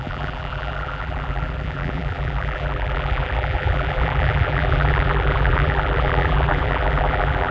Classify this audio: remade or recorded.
remade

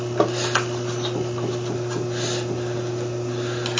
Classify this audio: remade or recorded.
recorded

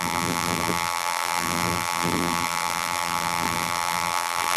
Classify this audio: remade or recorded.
remade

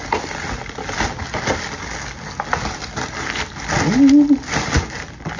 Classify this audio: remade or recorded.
recorded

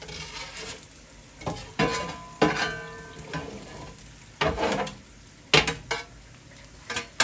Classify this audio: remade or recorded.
recorded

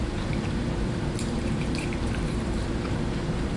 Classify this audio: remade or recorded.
remade